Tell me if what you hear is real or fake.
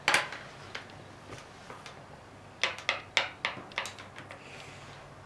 real